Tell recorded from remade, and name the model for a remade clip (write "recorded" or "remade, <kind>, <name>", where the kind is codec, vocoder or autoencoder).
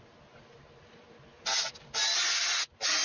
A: recorded